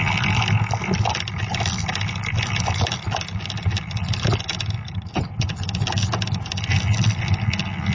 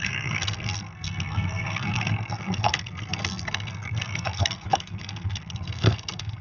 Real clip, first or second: first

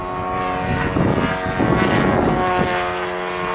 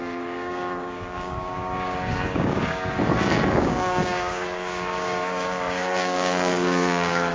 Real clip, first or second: first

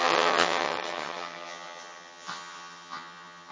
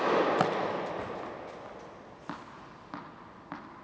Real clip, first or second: second